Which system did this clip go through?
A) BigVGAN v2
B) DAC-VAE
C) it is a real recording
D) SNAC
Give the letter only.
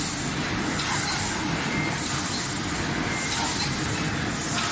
C